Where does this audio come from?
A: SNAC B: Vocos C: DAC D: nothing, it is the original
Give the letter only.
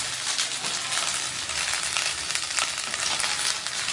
D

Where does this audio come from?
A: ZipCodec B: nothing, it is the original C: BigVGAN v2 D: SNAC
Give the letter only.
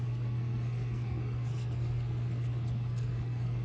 D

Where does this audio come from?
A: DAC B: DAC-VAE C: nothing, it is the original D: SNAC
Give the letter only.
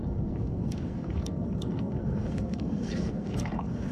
D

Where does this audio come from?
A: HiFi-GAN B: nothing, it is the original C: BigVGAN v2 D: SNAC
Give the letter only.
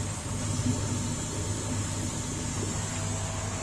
B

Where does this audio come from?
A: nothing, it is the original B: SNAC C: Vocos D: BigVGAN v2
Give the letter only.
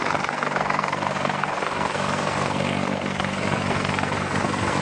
B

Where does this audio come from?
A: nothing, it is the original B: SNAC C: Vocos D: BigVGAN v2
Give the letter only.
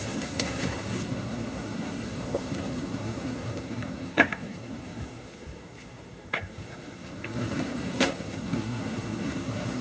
B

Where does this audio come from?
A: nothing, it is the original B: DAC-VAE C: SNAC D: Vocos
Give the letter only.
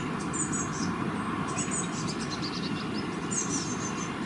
A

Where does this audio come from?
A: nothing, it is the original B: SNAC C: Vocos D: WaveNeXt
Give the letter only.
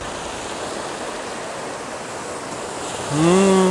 A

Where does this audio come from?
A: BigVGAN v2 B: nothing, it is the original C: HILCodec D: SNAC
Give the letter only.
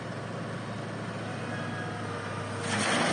B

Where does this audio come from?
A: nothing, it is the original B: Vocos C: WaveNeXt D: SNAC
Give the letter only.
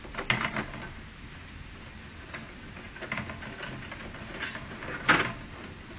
A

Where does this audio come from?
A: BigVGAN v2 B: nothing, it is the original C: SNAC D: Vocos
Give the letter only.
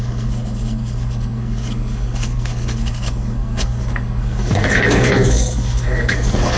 C